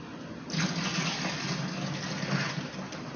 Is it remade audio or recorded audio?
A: recorded